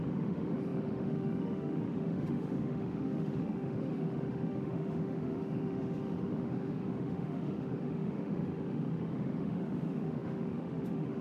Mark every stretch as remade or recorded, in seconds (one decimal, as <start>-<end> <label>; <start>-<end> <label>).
0.0-11.2 remade